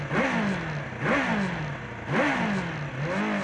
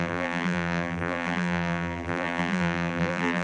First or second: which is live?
first